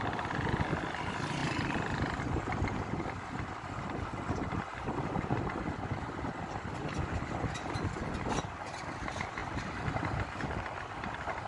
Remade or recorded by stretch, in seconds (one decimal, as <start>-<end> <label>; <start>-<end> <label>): 0.0-11.5 recorded